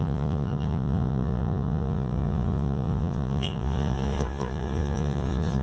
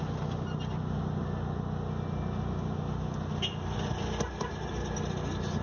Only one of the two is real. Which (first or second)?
second